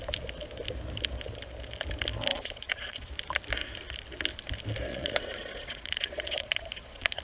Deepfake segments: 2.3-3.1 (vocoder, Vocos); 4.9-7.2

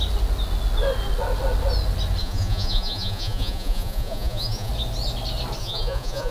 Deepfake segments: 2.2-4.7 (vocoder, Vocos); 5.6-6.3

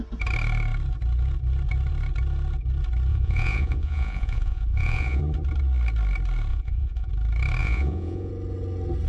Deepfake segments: 3.1-5.2 (vocoder, Vocos); 6.5-7.1; 7.6-8.3

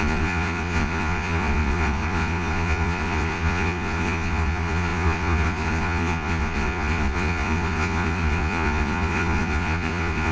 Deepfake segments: 0.0-10.3 (vocoder, Vocos)

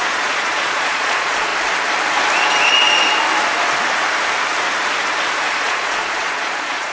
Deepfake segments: 0.0-1.5 (vocoder, Vocos); 5.6-6.9